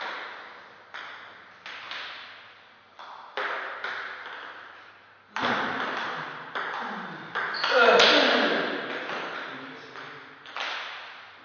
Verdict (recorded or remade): recorded